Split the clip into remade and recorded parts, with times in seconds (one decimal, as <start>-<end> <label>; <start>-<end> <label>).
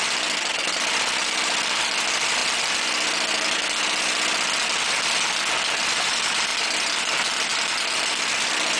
0.0-2.4 remade; 2.4-5.8 recorded; 5.8-6.5 remade; 6.5-8.0 recorded; 8.0-8.8 remade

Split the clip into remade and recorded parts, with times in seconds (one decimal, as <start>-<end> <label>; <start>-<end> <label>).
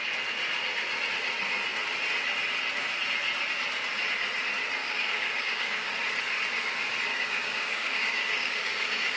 0.0-4.8 recorded; 4.8-5.9 remade; 5.9-7.1 recorded; 7.1-9.2 remade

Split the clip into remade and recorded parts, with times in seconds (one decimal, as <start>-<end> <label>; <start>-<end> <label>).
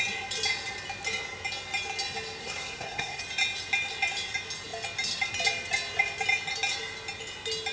0.0-2.4 recorded; 2.4-3.2 remade; 3.2-7.7 recorded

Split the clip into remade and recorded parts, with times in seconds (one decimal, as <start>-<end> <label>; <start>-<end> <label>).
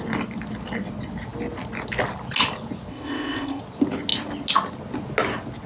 0.0-2.9 recorded; 2.9-3.6 remade; 3.6-5.7 recorded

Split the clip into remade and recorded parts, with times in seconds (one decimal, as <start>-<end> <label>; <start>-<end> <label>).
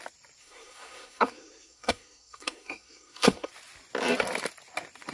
0.0-0.4 recorded; 0.4-3.5 remade; 3.5-5.1 recorded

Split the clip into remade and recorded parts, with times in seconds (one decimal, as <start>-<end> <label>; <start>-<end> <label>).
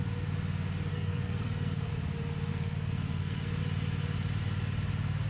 0.0-0.9 recorded; 0.9-1.9 remade; 1.9-2.5 recorded; 2.5-3.6 remade; 3.6-5.3 recorded